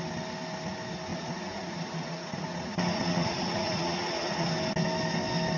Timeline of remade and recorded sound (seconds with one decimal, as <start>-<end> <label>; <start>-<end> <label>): 0.0-1.1 recorded; 1.1-4.5 remade; 4.5-5.6 recorded